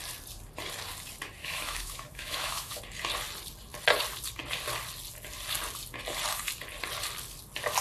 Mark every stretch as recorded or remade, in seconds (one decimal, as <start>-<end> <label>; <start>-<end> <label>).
0.0-1.4 recorded; 1.4-2.8 remade; 2.8-7.8 recorded